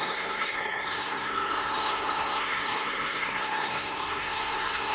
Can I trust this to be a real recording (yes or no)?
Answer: no